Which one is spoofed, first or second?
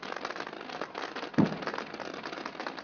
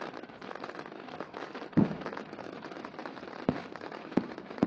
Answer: second